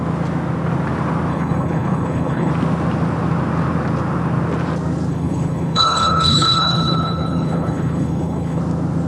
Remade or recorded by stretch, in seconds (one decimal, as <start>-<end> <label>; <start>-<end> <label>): 0.0-1.3 recorded; 1.3-2.5 remade; 2.5-5.1 recorded; 5.1-8.6 remade; 8.6-9.1 recorded